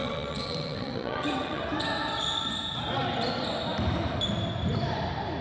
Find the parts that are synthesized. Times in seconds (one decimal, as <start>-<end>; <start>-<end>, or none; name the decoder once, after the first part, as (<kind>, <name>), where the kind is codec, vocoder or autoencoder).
0.0-1.6 (vocoder, WaveNeXt)